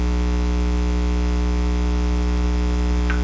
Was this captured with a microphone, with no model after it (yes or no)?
yes